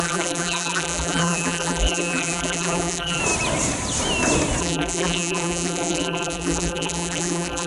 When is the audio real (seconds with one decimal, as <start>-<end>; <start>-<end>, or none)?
3.2-4.6